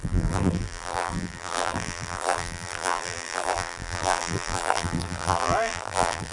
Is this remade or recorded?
remade